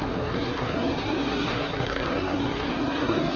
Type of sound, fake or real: fake